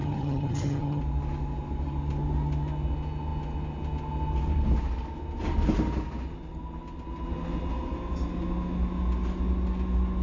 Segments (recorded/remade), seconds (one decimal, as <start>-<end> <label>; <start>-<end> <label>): 0.0-1.0 remade; 1.0-10.2 recorded